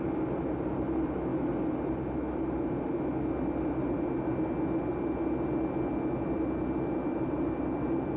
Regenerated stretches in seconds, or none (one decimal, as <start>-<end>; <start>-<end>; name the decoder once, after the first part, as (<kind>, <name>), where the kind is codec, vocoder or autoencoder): 7.1-8.2 (vocoder, BigVGAN v2)